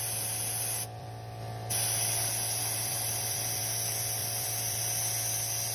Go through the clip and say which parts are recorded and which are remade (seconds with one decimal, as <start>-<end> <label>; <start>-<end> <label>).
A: 0.0-1.0 recorded; 1.0-1.7 remade; 1.7-2.6 recorded; 2.6-3.6 remade; 3.6-4.2 recorded; 4.2-4.8 remade; 4.8-5.7 recorded